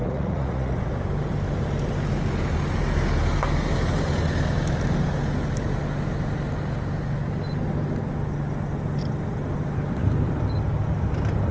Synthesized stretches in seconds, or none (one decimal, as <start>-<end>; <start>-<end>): 0.0-0.9

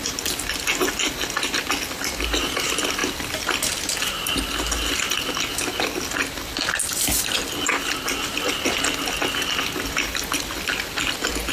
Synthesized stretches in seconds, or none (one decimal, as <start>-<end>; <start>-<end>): none

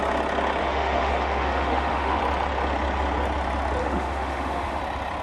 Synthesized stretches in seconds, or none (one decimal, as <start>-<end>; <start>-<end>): 0.6-2.2; 3.8-4.8

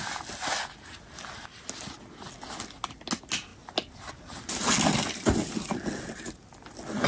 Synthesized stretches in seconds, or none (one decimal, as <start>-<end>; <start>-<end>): none

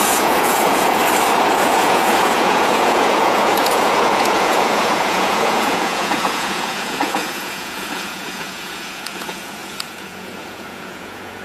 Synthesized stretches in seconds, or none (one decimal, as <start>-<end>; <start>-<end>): 0.0-1.0; 1.5-11.4

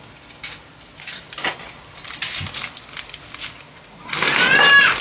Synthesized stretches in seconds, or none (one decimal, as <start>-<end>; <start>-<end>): none

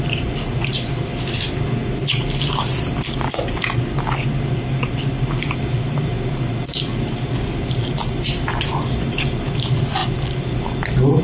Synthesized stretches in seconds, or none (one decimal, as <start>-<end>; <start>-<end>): none

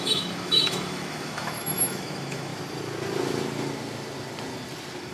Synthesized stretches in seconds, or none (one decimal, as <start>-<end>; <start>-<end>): 0.0-2.5